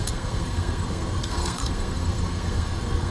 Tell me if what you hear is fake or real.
fake